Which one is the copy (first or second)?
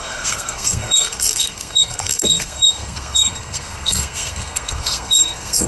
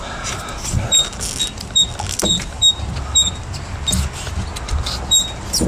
first